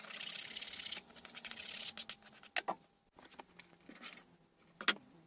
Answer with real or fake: real